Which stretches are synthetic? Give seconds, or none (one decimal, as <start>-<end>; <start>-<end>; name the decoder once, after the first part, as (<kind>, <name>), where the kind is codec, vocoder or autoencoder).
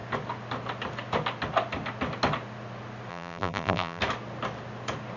3.1-4.0 (vocoder, BigVGAN v2)